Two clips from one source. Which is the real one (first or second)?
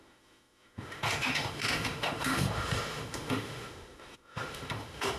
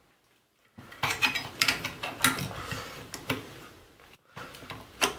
second